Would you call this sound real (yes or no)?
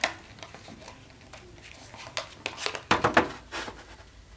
yes